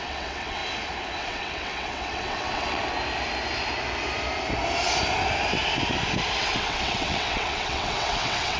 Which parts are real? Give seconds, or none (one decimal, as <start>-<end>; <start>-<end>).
0.6-1.2; 2.8-6.4